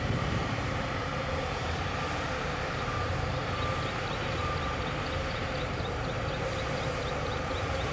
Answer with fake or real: fake